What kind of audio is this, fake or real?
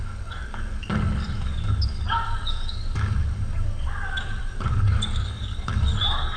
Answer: fake